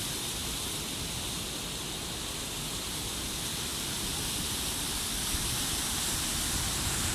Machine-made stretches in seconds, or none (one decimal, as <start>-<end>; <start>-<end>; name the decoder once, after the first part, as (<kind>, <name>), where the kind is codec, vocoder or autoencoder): none